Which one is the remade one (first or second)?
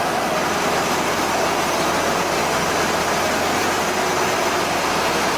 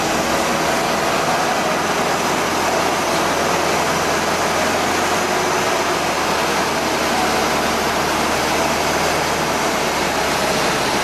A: first